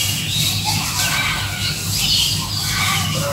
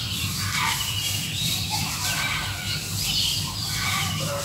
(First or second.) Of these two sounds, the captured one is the first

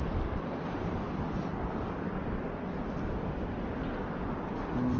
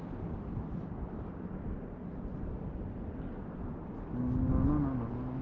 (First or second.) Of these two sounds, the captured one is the second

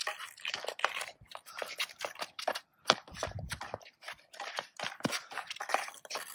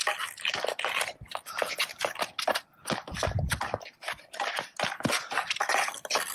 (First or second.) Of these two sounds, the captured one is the second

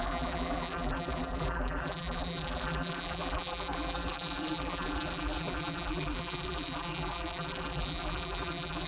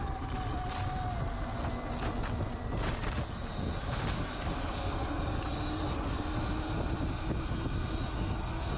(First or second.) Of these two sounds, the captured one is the second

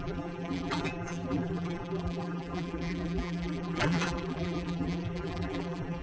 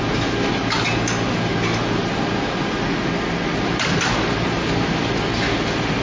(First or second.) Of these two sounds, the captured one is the second